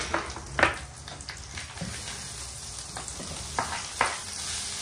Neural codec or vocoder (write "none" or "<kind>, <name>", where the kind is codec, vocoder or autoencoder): none